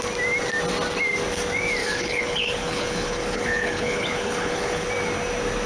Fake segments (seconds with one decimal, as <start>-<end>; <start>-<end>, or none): 1.8-4.9